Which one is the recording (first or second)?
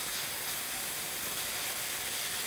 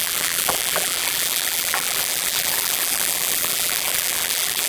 first